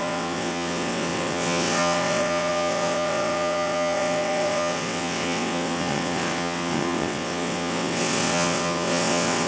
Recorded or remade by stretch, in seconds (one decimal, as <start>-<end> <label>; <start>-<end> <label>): 0.0-9.5 remade